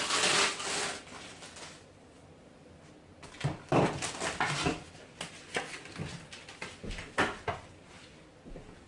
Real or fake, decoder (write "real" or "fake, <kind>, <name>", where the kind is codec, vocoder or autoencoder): real